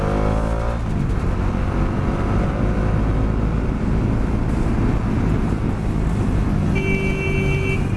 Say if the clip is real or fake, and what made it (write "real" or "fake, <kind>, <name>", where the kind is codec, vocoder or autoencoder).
real